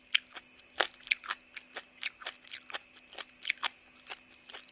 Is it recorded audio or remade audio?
recorded